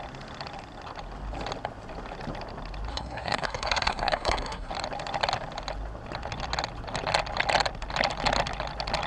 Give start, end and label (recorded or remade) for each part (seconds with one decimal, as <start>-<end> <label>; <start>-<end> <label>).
0.0-2.9 recorded; 2.9-4.7 remade; 4.7-9.1 recorded